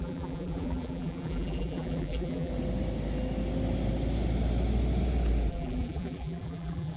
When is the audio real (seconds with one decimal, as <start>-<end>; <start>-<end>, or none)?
2.5-5.5